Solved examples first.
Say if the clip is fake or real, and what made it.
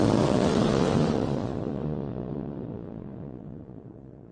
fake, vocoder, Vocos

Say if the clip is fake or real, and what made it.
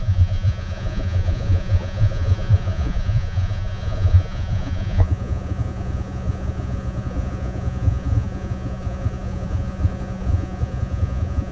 fake, vocoder, Vocos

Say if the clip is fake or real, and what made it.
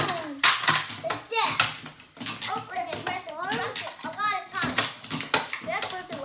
real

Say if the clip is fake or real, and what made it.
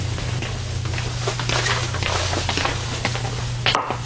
real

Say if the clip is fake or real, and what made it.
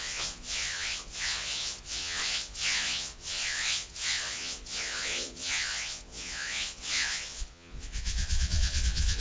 fake, vocoder, Vocos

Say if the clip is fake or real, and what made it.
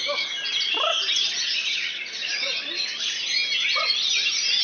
real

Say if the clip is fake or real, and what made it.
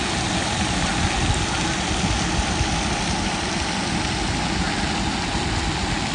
real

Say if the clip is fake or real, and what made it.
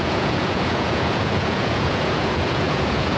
fake, vocoder, Vocos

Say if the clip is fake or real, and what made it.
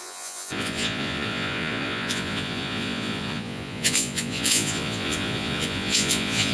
fake, vocoder, Vocos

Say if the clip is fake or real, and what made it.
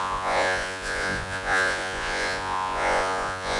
fake, vocoder, Vocos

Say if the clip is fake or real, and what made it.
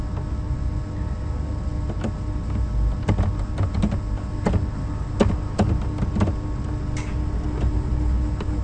real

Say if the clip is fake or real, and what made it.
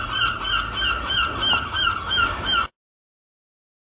real